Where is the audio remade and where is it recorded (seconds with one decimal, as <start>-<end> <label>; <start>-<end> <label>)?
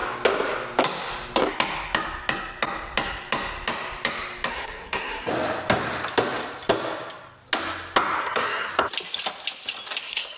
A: 0.0-4.5 recorded; 4.5-5.3 remade; 5.3-8.2 recorded; 8.2-8.7 remade; 8.7-10.0 recorded; 10.0-10.4 remade